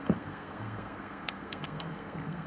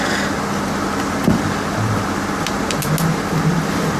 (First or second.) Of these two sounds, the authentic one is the second